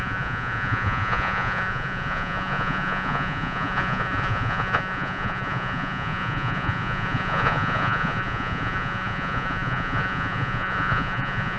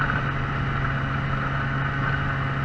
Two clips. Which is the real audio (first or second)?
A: second